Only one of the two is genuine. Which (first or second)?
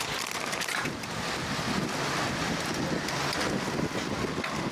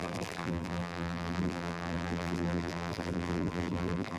first